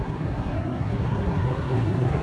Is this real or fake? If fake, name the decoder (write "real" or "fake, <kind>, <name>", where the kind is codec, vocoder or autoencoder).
fake, codec, SNAC